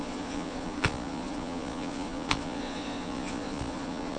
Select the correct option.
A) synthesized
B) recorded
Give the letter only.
A